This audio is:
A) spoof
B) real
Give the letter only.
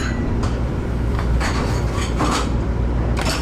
A